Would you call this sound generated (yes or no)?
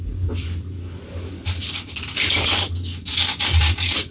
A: yes